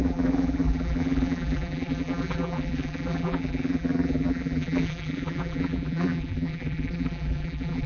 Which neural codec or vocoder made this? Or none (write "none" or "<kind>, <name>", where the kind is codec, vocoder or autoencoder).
vocoder, BigVGAN v2